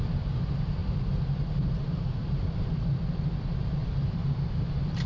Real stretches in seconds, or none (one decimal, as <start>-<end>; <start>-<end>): 0.0-0.8; 3.3-3.8